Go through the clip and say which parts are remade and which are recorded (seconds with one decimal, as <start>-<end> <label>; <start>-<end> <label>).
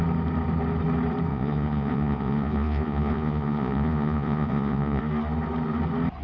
0.0-1.3 recorded; 1.3-5.0 remade; 5.0-6.2 recorded